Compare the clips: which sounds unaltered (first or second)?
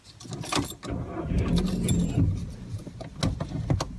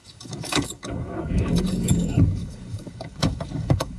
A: first